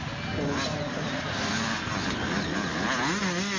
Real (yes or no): yes